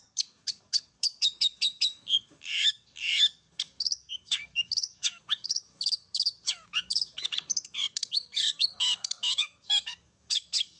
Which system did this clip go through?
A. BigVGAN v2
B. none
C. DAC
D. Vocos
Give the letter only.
C